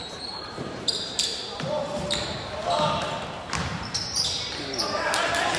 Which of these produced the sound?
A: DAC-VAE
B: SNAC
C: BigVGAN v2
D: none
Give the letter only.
C